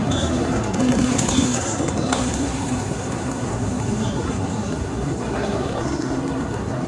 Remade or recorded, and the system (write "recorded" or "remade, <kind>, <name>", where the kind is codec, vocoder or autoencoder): remade, codec, SNAC